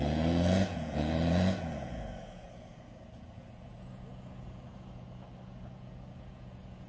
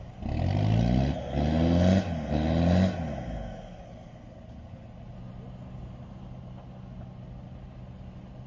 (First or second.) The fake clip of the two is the first